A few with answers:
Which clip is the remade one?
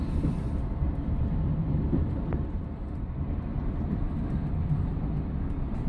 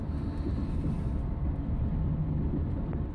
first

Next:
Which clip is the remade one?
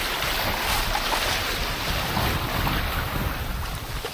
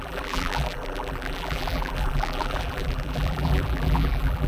second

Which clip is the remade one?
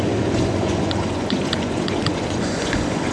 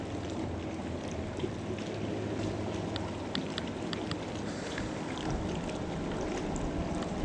first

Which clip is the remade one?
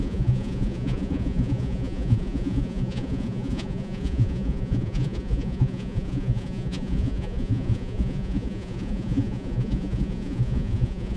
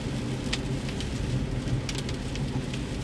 first